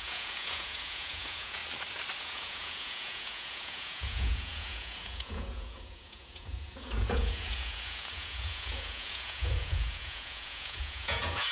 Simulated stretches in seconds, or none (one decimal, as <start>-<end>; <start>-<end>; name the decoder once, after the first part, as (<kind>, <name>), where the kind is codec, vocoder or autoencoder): 0.0-1.6 (vocoder, Vocos); 2.2-11.5